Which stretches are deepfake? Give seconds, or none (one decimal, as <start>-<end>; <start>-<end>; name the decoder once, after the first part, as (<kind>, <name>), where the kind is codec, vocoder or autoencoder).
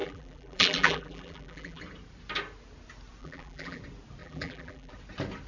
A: 0.0-1.8 (vocoder, BigVGAN v2); 3.2-3.8; 4.2-4.9